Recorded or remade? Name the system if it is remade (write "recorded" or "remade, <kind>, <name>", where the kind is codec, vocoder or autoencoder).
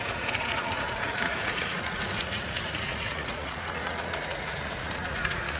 remade, vocoder, Vocos